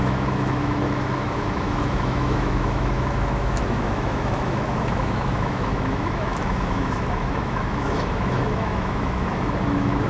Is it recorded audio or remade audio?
remade